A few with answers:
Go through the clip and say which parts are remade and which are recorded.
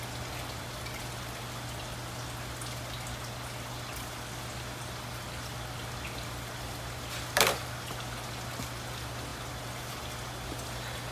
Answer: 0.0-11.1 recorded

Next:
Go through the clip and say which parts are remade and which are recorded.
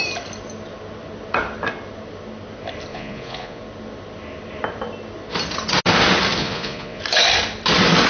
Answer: 0.0-2.9 recorded; 2.9-3.6 remade; 3.6-6.4 recorded; 6.4-7.0 remade; 7.0-8.1 recorded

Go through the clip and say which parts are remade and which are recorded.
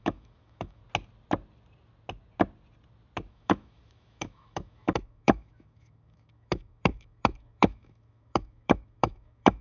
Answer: 0.0-0.8 remade; 0.8-3.3 recorded; 3.3-9.6 remade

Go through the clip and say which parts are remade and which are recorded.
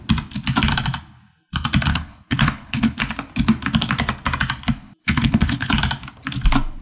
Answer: 0.0-1.9 recorded; 1.9-3.0 remade; 3.0-5.0 recorded; 5.0-5.7 remade; 5.7-6.8 recorded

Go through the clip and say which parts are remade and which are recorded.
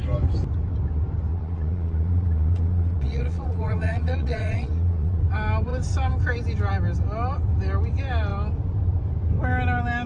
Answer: 0.0-1.3 recorded; 1.3-5.2 remade; 5.2-10.1 recorded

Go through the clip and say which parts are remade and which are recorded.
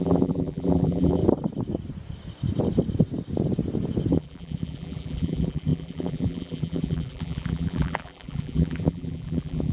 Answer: 0.0-1.2 remade; 1.2-4.1 recorded; 4.1-9.7 remade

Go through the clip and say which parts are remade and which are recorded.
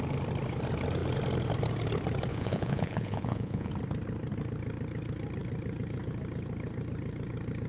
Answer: 0.0-2.3 recorded; 2.3-3.7 remade; 3.7-7.7 recorded